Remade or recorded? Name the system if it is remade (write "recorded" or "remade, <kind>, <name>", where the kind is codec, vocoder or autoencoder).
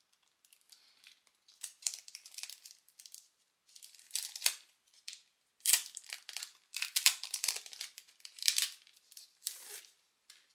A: remade, vocoder, BigVGAN v2